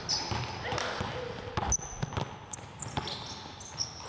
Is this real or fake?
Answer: real